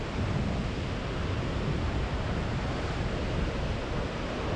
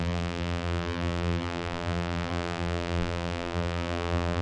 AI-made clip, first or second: second